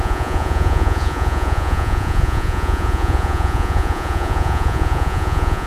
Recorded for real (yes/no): no